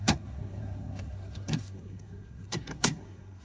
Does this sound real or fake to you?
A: fake